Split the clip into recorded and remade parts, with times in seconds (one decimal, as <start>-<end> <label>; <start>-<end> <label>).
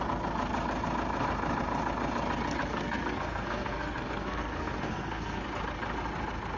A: 0.0-2.7 recorded; 2.7-5.4 remade; 5.4-6.6 recorded